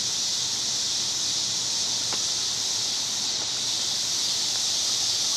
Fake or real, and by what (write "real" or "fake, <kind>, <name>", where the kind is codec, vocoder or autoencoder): real